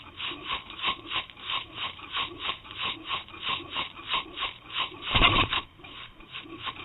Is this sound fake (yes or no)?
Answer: yes